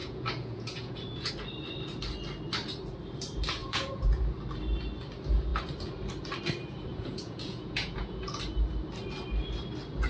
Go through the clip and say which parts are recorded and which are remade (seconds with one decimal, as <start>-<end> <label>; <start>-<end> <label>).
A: 0.0-1.3 remade; 1.3-3.6 recorded; 3.6-4.2 remade; 4.2-6.9 recorded; 6.9-8.4 remade; 8.4-10.1 recorded